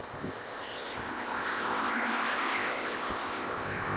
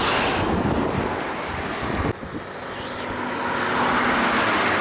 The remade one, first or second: first